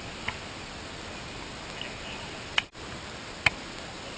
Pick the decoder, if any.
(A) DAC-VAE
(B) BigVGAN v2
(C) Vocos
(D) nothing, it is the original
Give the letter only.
D